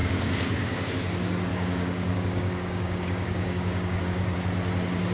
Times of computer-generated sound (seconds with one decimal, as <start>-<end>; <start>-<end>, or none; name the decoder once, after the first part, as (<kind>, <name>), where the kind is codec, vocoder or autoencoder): 0.0-0.9 (codec, DAC); 1.5-4.0